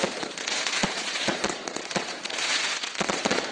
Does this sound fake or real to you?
fake